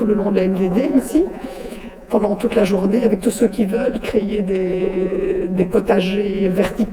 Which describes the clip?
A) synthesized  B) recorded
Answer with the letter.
A